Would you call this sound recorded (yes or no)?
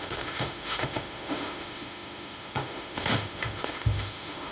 no